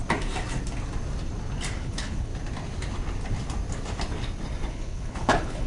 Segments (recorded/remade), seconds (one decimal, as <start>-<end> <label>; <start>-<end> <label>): 0.0-1.8 recorded; 1.8-2.3 remade; 2.3-4.7 recorded; 4.7-5.7 remade